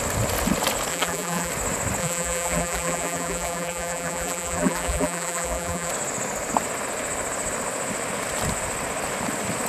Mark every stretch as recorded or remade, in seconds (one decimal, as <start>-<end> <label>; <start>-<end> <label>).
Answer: 0.0-0.9 recorded; 0.9-1.5 remade; 1.5-2.0 recorded; 2.0-5.9 remade; 5.9-9.7 recorded